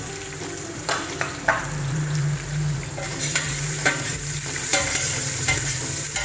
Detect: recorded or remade remade